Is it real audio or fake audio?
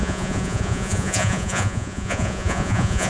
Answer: fake